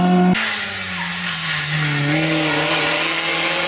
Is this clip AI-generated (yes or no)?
no